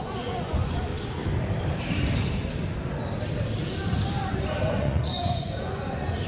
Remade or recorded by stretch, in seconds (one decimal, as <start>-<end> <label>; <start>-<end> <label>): 0.0-0.9 remade; 0.9-4.6 recorded; 4.6-6.3 remade